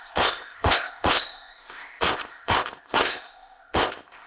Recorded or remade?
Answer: remade